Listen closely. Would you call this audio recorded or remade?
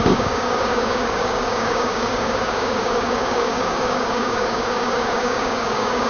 remade